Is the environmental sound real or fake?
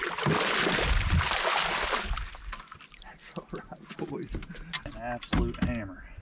real